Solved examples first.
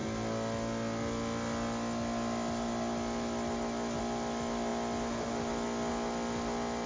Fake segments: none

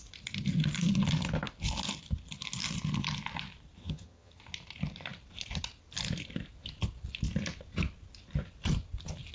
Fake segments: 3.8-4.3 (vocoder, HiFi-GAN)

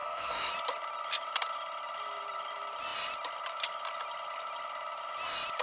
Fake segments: 0.0-0.5 (codec, SNAC)

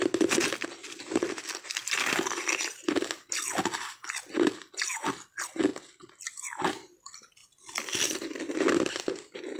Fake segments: 0.8-1.3 (vocoder, BigVGAN v2); 1.8-2.6; 7.4-8.9